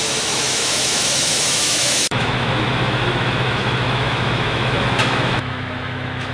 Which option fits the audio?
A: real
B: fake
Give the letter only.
B